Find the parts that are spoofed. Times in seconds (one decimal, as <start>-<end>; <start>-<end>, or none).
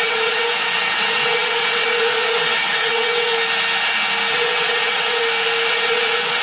0.0-3.3; 4.3-5.2; 5.7-6.4